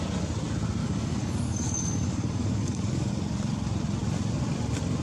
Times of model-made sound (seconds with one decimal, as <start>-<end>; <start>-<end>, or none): 0.8-3.1